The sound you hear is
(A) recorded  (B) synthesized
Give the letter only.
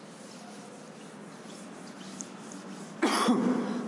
A